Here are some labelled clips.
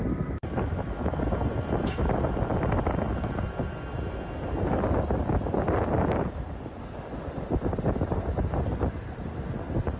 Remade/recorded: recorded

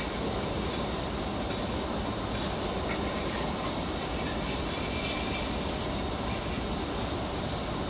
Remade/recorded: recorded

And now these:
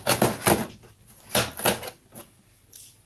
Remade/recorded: recorded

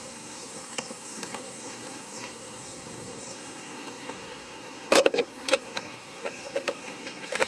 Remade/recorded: remade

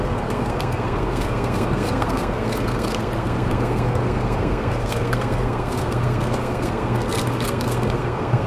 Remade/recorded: remade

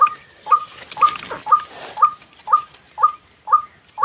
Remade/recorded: recorded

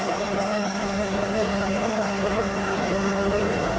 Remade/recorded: remade